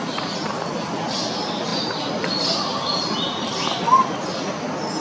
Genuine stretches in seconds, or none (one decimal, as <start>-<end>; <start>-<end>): 0.0-5.0